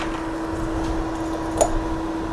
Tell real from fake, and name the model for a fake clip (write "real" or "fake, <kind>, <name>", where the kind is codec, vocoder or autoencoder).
real